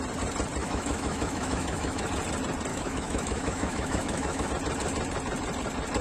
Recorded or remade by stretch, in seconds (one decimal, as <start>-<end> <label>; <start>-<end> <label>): 0.0-0.6 recorded; 0.6-2.1 remade; 2.1-2.7 recorded; 2.7-4.5 remade; 4.5-6.0 recorded